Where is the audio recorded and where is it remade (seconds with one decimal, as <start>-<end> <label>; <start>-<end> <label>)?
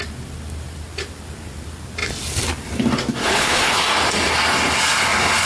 0.0-3.2 recorded; 3.2-3.8 remade; 3.8-5.5 recorded